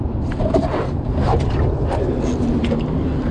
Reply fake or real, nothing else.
real